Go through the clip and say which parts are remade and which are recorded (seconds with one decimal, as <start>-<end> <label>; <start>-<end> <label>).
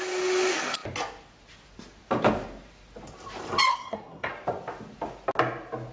0.0-3.7 recorded; 3.7-4.3 remade; 4.3-5.9 recorded